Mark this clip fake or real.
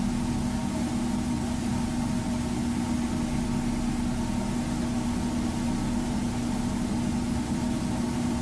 real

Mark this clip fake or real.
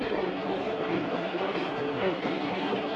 fake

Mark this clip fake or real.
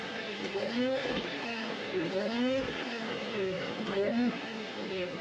fake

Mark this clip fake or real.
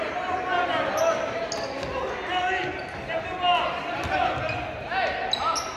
real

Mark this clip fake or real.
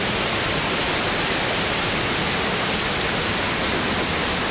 real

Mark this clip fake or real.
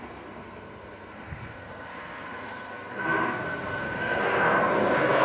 fake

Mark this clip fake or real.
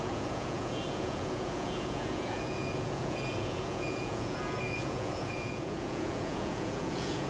fake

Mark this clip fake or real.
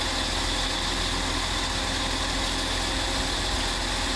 real